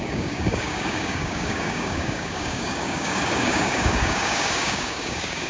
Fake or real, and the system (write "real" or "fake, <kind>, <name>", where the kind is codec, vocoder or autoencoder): fake, codec, DAC